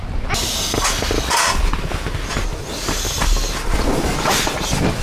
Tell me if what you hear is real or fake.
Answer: real